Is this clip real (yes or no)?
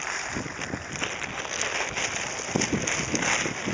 yes